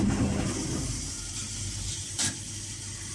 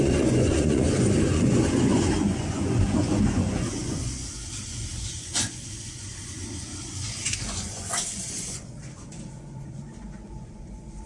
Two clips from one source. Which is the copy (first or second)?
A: second